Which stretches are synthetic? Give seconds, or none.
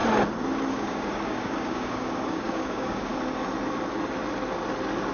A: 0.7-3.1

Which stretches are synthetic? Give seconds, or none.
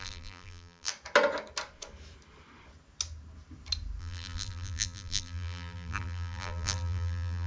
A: 0.0-0.9; 4.0-7.5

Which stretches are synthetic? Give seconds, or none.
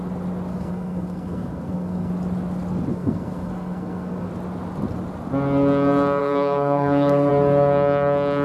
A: 0.5-2.1; 2.9-4.3; 6.2-7.3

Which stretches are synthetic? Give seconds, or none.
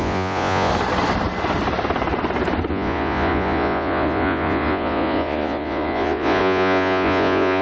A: 0.0-0.7; 2.7-7.6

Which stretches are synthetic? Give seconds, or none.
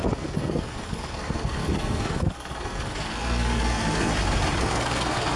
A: 0.0-4.1; 4.6-5.4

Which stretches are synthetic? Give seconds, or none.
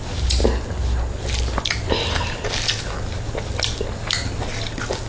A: none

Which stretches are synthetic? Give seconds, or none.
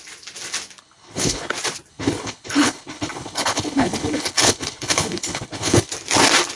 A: 0.8-1.5; 1.9-5.9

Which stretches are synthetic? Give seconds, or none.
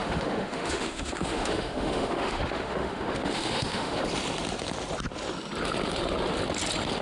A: 0.0-4.0